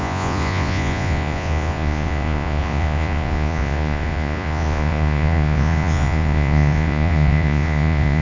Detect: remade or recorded remade